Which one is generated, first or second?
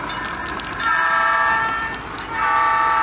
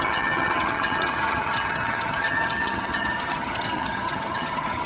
second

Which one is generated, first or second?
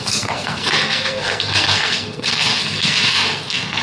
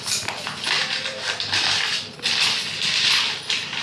first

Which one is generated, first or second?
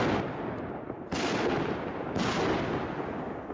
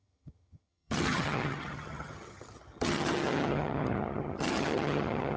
second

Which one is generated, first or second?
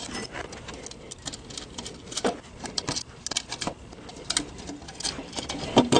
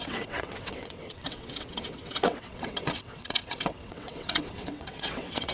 second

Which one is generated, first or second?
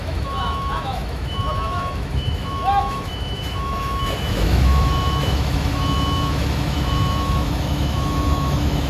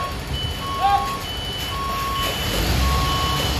first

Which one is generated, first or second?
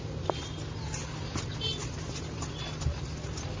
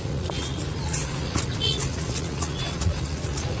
second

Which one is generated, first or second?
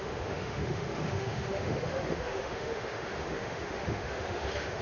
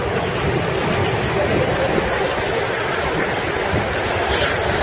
first